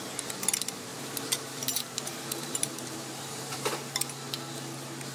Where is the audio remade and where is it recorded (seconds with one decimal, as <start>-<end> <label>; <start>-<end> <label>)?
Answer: 0.0-0.9 recorded; 0.9-3.9 remade; 3.9-5.1 recorded